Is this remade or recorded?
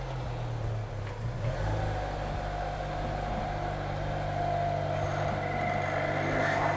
recorded